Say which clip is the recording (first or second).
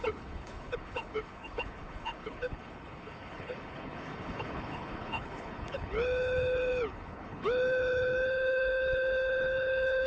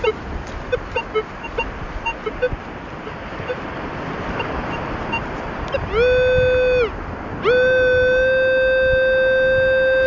second